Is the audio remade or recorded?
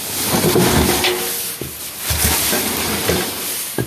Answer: recorded